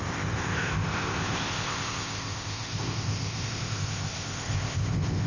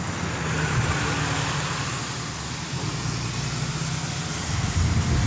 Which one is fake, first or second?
first